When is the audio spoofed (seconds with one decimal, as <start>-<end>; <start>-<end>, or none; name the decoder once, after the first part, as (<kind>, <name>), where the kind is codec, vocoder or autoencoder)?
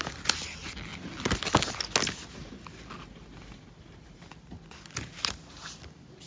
none